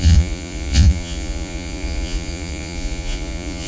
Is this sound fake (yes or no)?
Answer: yes